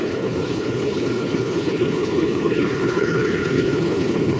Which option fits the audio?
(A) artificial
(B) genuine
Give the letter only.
A